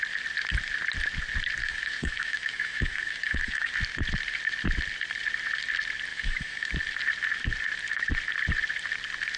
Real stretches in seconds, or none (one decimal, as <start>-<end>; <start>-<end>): 0.0-1.6; 3.7-6.1; 6.7-9.4